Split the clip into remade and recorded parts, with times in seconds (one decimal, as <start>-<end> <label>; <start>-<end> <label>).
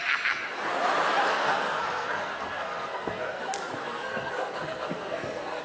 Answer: 0.0-1.3 recorded; 1.3-3.4 remade; 3.4-3.8 recorded; 3.8-5.6 remade